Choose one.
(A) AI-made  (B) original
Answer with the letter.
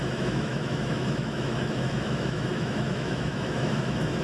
A